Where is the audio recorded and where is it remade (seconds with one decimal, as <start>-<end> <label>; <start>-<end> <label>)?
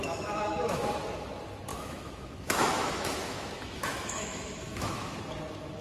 0.0-0.9 remade; 0.9-1.7 recorded; 1.7-5.2 remade; 5.2-5.8 recorded